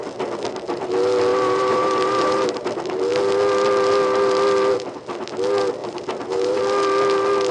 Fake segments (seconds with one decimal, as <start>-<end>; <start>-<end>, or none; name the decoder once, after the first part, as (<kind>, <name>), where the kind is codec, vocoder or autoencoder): 1.3-2.6 (vocoder, BigVGAN v2); 5.8-6.6

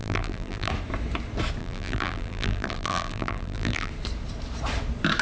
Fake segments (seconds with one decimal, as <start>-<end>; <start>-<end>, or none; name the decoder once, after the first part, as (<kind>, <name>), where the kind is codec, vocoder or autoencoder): 0.0-0.7 (vocoder, BigVGAN v2); 1.6-3.9